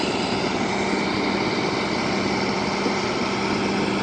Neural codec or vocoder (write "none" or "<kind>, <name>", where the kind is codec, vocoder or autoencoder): none